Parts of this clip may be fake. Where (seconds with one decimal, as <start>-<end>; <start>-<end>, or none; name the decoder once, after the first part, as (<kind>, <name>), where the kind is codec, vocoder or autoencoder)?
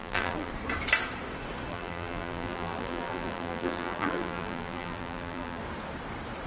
0.0-0.5 (vocoder, BigVGAN v2); 1.7-5.6